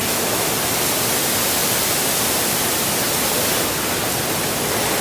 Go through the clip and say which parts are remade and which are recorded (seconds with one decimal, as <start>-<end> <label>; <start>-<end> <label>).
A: 0.0-0.5 remade; 0.5-5.0 recorded